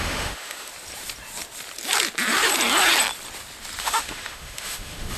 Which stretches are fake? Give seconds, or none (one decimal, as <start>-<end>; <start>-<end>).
0.0-0.7; 3.8-5.2